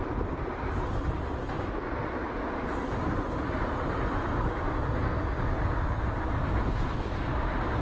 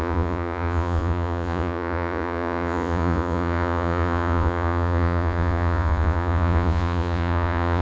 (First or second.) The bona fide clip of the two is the first